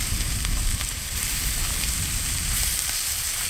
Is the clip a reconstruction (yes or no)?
yes